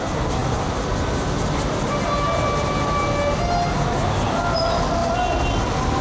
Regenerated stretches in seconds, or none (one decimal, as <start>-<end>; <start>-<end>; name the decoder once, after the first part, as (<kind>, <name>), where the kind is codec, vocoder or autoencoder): none